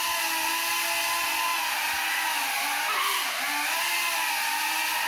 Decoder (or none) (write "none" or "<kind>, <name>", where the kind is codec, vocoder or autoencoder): none